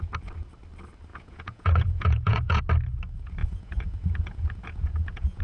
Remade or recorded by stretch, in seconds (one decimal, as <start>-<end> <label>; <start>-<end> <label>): 0.0-1.1 recorded; 1.1-2.6 remade; 2.6-3.4 recorded; 3.4-5.4 remade